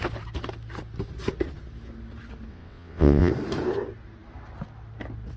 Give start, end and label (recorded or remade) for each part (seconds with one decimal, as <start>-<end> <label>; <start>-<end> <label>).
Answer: 0.0-2.5 recorded; 2.5-3.3 remade; 3.3-5.4 recorded